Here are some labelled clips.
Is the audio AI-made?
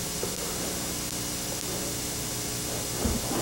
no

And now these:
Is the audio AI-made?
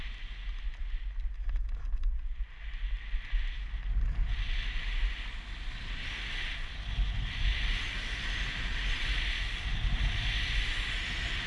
no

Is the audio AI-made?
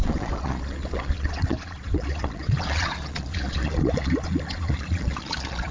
yes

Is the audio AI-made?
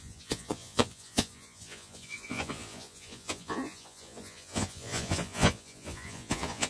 yes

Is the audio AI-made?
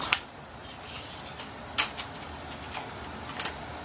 no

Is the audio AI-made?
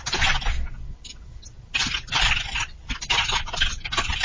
no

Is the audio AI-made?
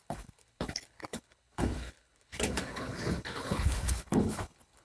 yes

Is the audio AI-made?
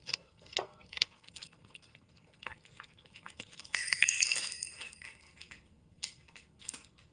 yes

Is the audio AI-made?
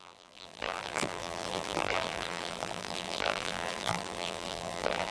yes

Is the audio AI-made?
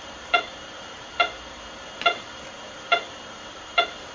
yes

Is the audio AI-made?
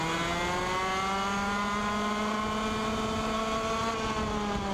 no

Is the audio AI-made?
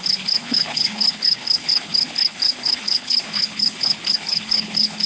yes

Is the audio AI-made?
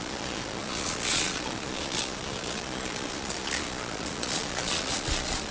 yes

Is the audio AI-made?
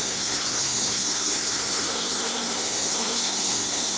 yes